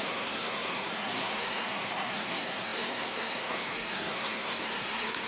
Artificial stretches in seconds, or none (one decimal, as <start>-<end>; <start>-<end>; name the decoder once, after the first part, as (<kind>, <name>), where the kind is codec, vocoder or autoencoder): 0.0-5.3 (codec, SNAC)